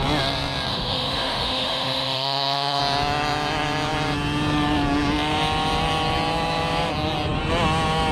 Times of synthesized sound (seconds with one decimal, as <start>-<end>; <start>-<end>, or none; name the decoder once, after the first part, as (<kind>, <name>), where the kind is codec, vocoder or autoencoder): 0.7-2.8 (autoencoder, DAC-VAE)